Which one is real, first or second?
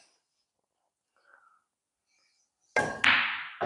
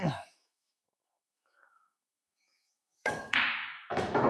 first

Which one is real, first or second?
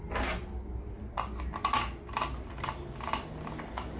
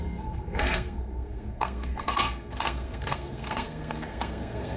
first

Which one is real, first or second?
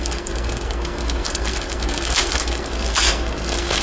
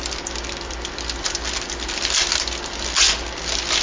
second